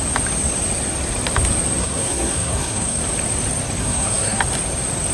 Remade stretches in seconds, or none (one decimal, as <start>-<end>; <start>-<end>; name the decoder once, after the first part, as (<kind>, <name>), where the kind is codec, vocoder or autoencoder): 1.8-3.0 (codec, SNAC); 3.8-4.4